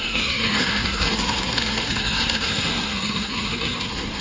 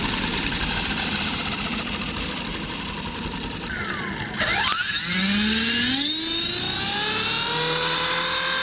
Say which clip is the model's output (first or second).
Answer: first